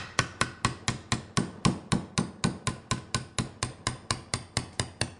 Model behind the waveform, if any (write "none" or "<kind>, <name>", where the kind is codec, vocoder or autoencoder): none